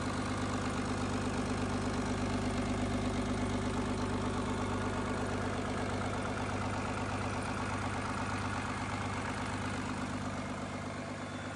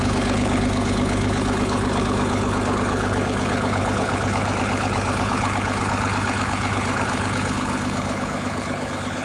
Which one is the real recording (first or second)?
first